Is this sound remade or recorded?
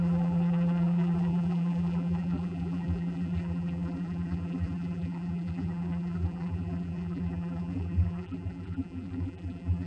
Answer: remade